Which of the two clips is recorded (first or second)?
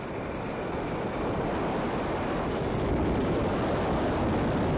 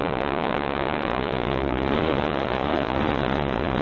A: first